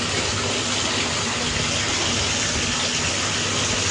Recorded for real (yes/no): yes